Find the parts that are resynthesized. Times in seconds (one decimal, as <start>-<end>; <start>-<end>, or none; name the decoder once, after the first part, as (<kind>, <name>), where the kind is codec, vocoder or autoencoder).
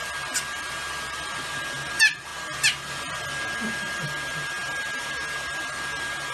none